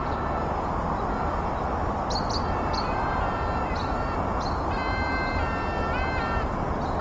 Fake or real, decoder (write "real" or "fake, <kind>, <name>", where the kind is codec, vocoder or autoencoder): real